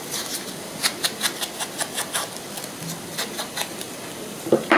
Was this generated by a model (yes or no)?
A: no